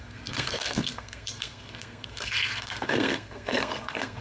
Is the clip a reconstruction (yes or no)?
yes